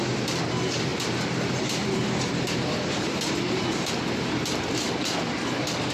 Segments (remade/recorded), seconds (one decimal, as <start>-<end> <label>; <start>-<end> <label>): 0.0-0.9 recorded; 0.9-3.9 remade; 3.9-5.9 recorded